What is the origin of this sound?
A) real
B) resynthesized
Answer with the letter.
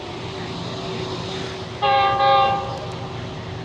A